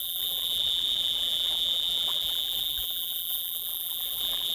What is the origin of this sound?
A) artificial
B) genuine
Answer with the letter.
A